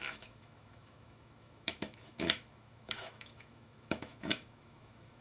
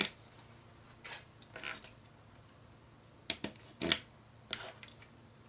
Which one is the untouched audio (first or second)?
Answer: second